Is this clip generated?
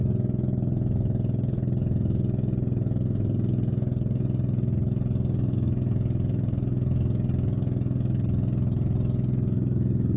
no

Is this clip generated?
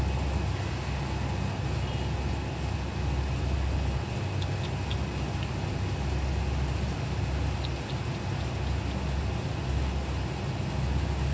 no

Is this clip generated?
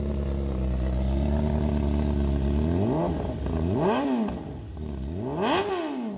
no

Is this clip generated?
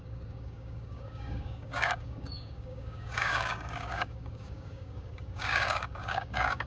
yes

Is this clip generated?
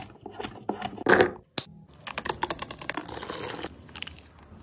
no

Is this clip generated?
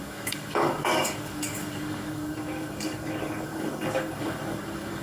yes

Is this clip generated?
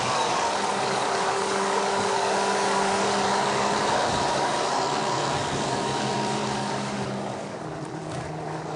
yes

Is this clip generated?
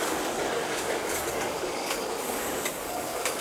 yes